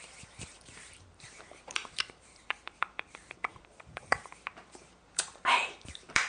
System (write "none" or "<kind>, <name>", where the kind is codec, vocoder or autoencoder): vocoder, BigVGAN v2